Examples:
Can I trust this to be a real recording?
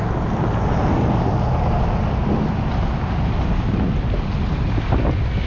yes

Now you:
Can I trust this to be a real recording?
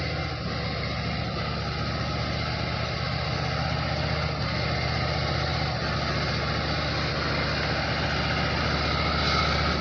yes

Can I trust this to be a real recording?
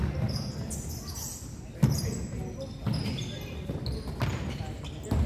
yes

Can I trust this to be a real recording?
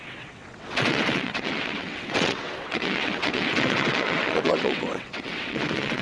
no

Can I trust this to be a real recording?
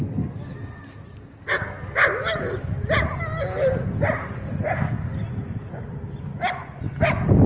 yes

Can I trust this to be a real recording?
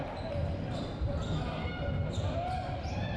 yes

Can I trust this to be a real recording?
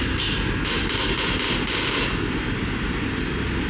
yes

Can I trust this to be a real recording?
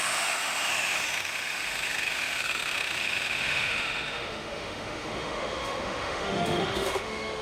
no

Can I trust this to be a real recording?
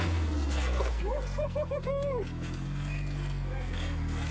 no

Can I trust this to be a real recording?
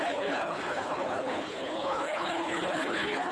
no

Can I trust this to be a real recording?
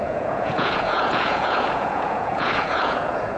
no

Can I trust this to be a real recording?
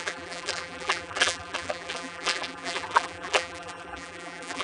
no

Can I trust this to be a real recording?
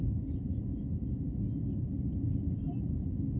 yes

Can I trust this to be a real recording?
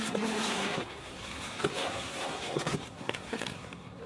no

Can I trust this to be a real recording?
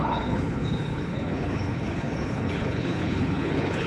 no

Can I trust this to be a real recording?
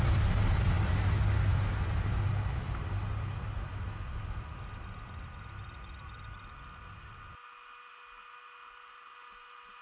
yes